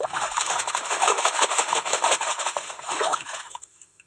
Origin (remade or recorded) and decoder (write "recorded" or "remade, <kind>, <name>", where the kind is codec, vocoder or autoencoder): remade, autoencoder, DAC-VAE